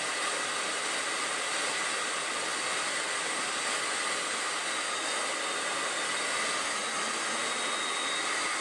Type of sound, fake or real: real